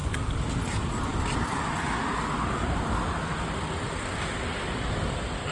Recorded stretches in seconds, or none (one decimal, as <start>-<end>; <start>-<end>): 0.0-5.5